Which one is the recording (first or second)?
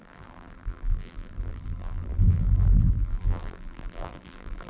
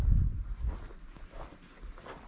second